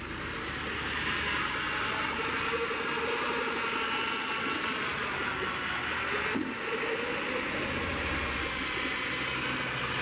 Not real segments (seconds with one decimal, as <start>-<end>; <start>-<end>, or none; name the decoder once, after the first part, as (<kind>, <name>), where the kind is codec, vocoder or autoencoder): none